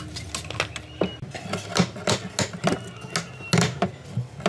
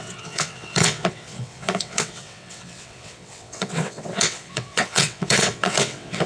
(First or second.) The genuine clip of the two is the first